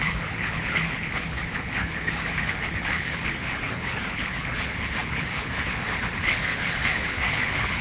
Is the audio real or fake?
fake